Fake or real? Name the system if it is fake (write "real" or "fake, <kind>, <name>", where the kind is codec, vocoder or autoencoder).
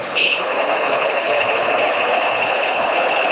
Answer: fake, codec, HILCodec